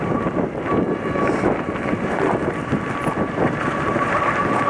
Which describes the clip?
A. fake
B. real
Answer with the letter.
B